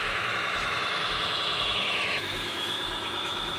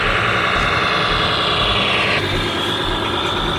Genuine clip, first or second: second